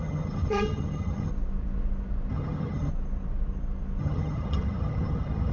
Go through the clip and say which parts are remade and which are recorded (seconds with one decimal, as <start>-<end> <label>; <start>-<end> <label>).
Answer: 0.0-1.3 remade; 1.3-2.3 recorded; 2.3-2.9 remade; 2.9-4.0 recorded; 4.0-5.5 remade